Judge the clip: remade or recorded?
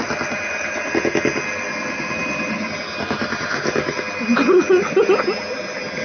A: recorded